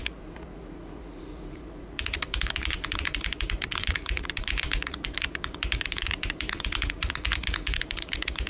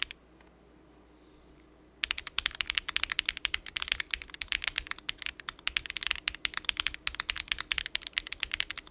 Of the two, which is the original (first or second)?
second